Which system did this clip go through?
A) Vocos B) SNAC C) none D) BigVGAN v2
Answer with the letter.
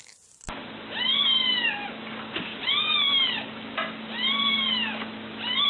C